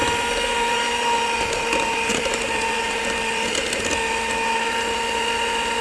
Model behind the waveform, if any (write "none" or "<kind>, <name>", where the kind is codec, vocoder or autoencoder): none